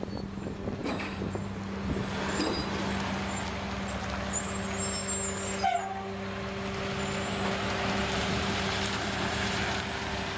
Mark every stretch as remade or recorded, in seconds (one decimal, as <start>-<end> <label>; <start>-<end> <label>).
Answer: 0.0-8.0 recorded; 8.0-9.6 remade; 9.6-10.4 recorded